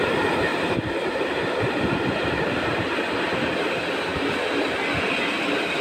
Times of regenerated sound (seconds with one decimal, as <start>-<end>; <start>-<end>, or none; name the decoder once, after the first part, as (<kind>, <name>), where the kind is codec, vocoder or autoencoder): 0.5-2.8 (vocoder, BigVGAN v2)